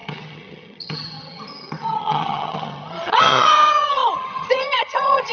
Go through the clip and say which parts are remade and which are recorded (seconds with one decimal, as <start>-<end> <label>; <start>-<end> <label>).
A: 0.0-5.3 remade